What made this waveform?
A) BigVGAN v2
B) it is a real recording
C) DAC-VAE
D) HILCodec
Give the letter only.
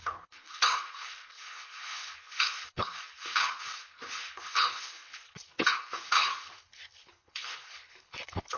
D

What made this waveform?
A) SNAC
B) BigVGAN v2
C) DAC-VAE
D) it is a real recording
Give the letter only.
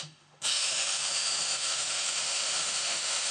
C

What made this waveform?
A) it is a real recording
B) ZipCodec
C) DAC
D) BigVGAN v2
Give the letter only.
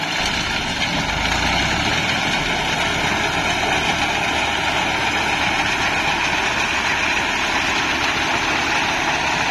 A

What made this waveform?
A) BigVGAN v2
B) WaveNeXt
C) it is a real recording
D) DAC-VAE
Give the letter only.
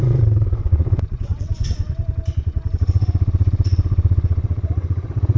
B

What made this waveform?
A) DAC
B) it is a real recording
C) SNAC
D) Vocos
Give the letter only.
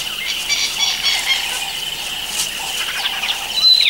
B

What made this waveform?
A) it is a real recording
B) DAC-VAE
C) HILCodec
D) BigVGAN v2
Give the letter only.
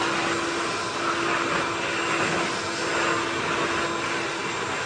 A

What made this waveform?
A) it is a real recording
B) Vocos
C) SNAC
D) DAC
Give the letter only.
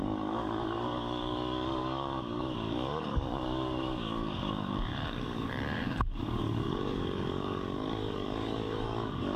D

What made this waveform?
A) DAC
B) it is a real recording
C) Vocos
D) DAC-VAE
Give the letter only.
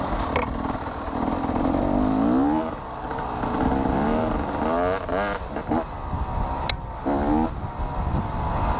B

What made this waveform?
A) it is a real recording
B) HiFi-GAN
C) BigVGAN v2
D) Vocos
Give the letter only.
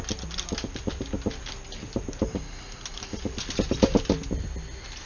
A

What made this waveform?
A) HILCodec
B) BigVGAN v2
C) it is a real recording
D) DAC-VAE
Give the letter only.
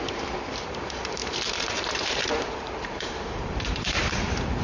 B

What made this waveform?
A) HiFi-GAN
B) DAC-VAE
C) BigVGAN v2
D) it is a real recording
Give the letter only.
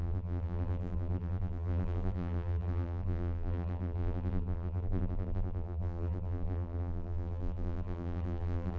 C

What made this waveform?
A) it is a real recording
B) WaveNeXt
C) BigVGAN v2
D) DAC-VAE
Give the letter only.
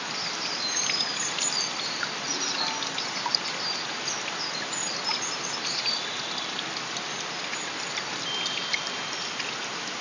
C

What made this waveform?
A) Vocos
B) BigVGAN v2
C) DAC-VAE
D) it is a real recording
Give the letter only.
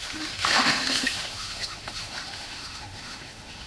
C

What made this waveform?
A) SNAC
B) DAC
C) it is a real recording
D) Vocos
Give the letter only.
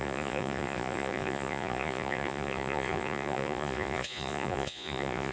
D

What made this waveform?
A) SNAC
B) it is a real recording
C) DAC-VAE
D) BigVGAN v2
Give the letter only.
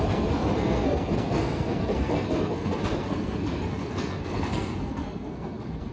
A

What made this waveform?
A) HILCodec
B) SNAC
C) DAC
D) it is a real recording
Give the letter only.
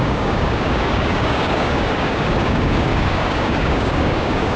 C